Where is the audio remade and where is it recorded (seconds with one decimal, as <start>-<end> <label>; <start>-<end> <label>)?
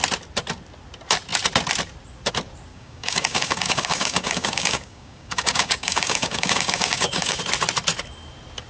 0.0-2.7 recorded; 2.7-7.4 remade; 7.4-8.7 recorded